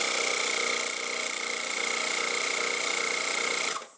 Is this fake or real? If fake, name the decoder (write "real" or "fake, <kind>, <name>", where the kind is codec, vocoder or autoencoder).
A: real